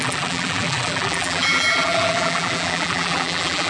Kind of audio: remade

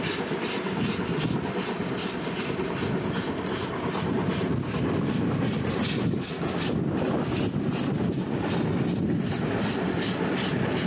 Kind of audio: recorded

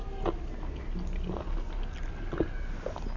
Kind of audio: recorded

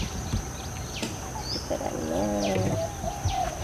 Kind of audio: recorded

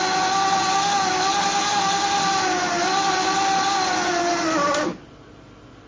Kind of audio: recorded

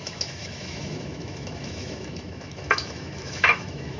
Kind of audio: remade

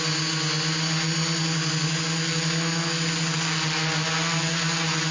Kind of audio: recorded